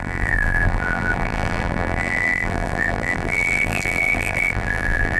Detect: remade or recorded remade